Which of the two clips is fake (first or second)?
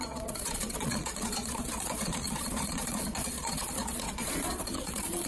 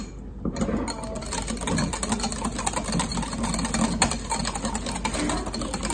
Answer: first